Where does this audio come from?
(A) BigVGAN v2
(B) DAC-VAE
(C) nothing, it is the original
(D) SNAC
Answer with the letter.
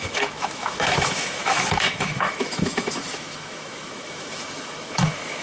B